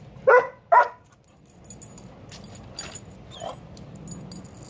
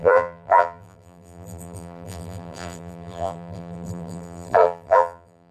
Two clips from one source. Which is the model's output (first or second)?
second